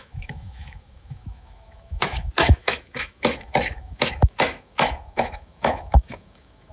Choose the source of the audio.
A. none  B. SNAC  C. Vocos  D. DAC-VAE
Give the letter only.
D